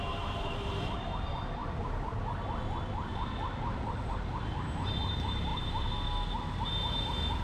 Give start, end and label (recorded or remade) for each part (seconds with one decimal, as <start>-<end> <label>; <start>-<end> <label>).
0.0-1.6 remade; 1.6-3.6 recorded; 3.6-5.5 remade; 5.5-7.4 recorded